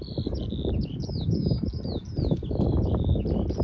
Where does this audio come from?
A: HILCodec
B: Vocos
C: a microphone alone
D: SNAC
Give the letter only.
C